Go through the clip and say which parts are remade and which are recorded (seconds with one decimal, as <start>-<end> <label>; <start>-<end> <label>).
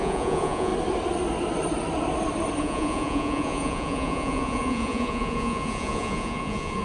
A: 0.0-0.7 remade; 0.7-2.6 recorded; 2.6-6.8 remade